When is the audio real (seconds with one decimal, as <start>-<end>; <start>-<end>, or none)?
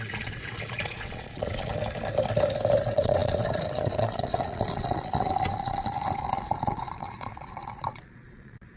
1.7-2.8